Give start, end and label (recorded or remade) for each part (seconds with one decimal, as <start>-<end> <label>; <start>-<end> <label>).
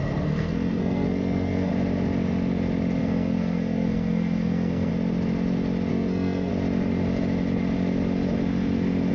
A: 0.0-1.7 remade; 1.7-3.0 recorded; 3.0-4.9 remade; 4.9-5.9 recorded; 5.9-6.5 remade; 6.5-9.1 recorded